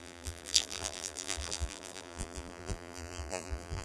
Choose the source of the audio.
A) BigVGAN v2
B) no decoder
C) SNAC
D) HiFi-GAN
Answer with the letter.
A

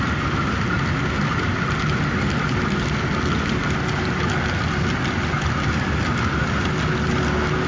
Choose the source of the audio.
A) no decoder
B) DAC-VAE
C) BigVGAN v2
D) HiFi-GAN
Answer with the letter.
A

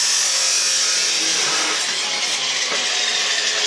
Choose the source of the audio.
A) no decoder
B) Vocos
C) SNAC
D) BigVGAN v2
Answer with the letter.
A